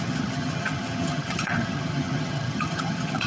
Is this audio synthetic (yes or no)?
yes